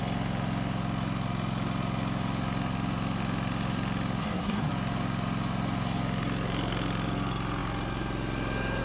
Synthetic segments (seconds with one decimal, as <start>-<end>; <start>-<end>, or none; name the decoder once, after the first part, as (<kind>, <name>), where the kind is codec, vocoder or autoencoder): 4.2-4.7 (codec, SNAC)